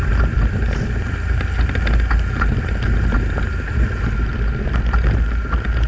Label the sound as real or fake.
real